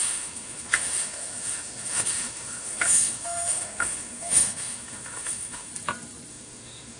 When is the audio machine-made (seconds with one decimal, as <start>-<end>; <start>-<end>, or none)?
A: 0.0-5.7; 6.3-7.0